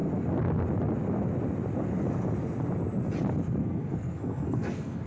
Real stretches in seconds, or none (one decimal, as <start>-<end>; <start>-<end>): 0.0-3.6